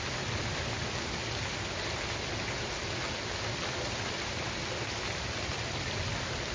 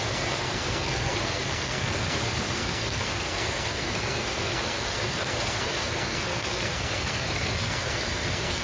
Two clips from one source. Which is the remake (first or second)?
second